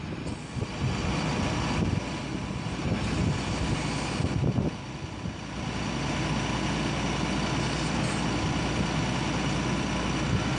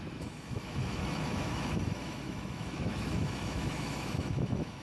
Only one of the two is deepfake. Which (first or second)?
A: second